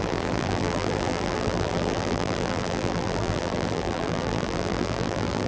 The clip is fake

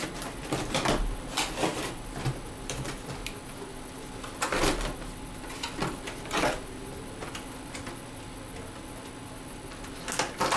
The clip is real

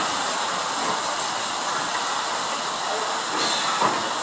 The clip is real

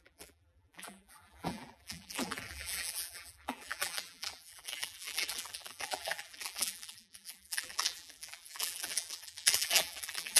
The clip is fake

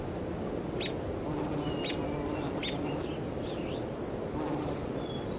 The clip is real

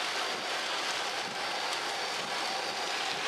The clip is real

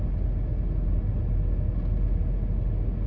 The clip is real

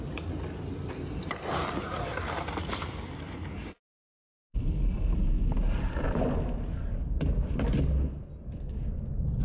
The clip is real